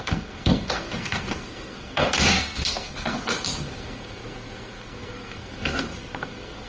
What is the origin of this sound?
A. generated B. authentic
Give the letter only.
A